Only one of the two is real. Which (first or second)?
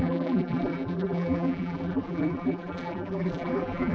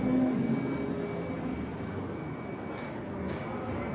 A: second